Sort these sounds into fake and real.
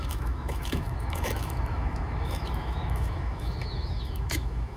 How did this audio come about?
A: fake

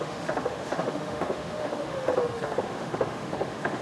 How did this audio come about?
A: fake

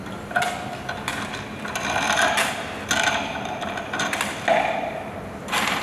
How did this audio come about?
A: real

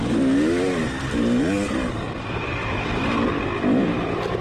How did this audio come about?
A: real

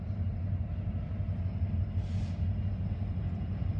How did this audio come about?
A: real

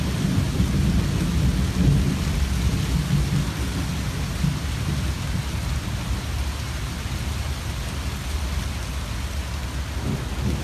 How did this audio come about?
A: real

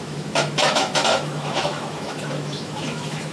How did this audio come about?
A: fake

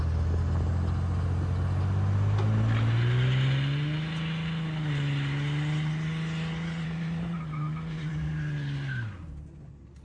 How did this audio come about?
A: real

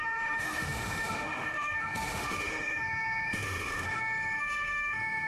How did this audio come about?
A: fake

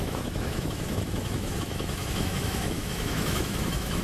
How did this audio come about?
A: fake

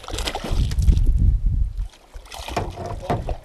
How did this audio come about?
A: real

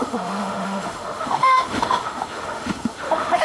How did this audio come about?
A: fake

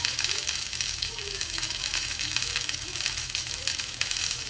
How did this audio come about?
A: fake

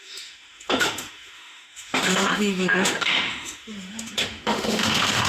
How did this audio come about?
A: fake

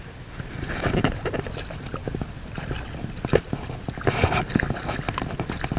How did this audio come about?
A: real